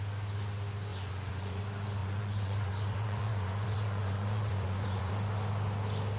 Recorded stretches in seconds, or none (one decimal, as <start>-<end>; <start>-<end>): 0.0-0.9; 1.6-2.0; 5.1-6.2